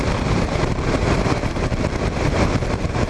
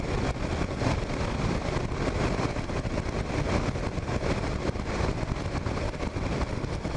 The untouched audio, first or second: second